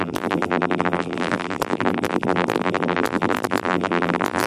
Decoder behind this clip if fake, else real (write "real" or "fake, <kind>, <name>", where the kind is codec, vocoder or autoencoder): fake, vocoder, BigVGAN v2